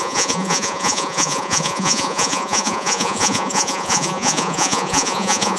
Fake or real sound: fake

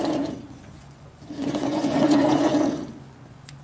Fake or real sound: fake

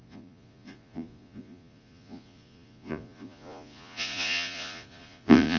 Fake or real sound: fake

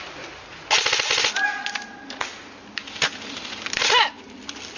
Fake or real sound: real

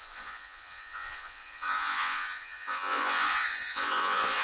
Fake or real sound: fake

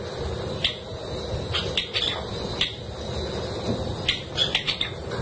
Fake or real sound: real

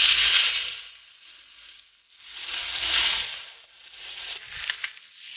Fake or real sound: real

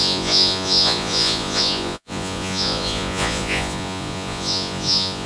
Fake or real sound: fake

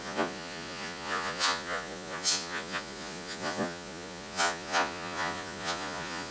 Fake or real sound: fake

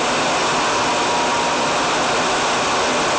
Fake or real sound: real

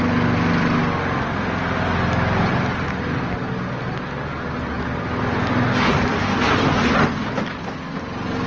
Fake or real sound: real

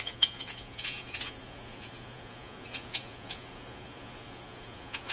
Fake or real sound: fake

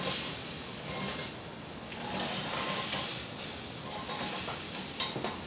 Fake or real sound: real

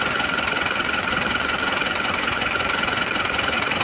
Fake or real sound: fake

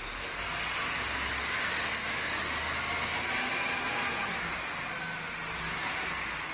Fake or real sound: real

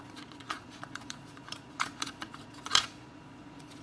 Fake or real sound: fake